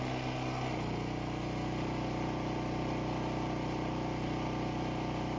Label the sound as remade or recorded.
recorded